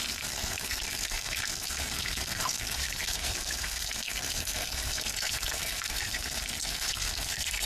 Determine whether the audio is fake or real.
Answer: fake